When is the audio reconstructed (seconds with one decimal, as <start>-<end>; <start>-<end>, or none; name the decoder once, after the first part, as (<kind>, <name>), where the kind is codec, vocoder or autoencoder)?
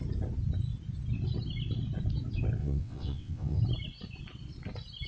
2.6-3.6 (vocoder, WaveNeXt)